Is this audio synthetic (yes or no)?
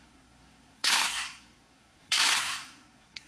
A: yes